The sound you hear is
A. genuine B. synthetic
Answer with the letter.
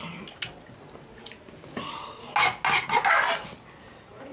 A